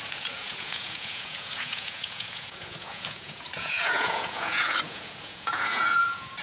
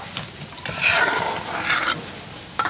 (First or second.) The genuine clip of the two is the second